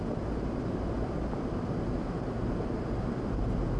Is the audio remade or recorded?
recorded